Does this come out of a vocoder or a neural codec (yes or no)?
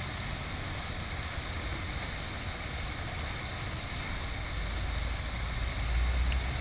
no